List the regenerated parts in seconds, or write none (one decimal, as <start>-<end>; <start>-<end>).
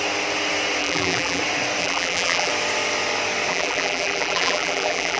0.8-1.4; 1.8-2.5; 3.5-5.2